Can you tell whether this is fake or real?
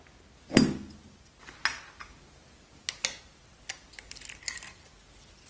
real